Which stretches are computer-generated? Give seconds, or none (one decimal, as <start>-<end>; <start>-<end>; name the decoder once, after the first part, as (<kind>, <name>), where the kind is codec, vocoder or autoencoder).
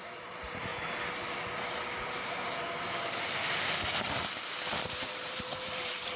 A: 0.0-0.7 (vocoder, BigVGAN v2); 2.2-3.4; 4.9-6.2